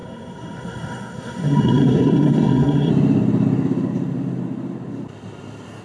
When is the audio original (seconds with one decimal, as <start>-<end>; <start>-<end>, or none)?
2.9-5.8